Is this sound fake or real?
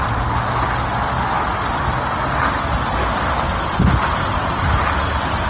real